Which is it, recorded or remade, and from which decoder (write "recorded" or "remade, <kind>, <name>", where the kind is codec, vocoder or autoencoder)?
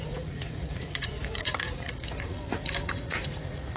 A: remade, vocoder, Vocos